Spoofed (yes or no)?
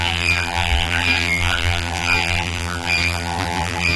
yes